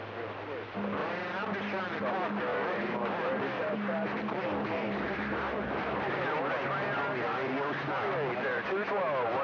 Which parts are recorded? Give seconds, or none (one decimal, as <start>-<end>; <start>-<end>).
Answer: 0.0-1.0; 1.6-2.5; 6.2-9.4